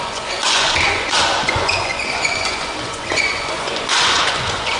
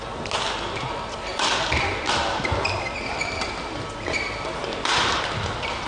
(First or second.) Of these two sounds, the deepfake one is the first